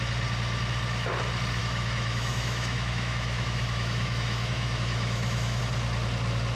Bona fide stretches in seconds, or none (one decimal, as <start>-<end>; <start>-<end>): 0.0-1.6; 5.6-6.6

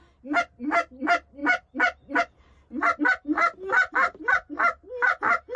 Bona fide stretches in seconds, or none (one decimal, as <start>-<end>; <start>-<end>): 0.0-5.6

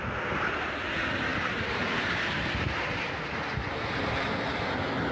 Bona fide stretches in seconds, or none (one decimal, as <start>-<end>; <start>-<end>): 0.0-1.3; 4.2-5.1

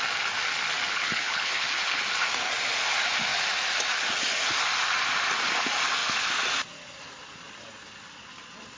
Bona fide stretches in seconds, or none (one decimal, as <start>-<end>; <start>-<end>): 0.0-0.9; 2.0-8.8

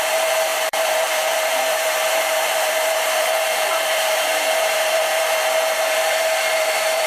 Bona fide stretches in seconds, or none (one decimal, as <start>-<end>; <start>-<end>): none

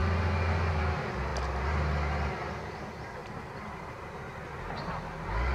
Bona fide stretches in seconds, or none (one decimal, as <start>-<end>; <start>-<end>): 0.0-3.2; 4.0-5.5

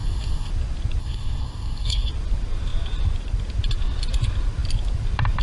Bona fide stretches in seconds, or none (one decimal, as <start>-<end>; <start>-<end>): 0.5-1.0; 2.1-5.4

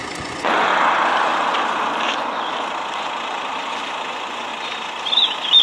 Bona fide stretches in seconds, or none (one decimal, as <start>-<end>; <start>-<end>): 0.7-4.1; 4.5-5.6